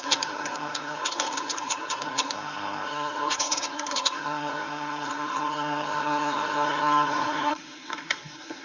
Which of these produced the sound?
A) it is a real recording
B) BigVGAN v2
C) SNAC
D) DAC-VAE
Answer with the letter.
C